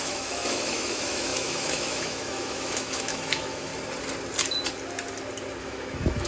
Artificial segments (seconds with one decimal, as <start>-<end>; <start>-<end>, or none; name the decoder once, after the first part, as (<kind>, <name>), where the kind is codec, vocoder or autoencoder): 0.0-3.7 (autoencoder, DAC-VAE); 5.6-6.3